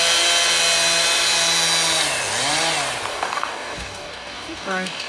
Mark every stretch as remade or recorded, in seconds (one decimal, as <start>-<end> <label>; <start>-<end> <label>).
0.0-3.1 recorded; 3.1-5.1 remade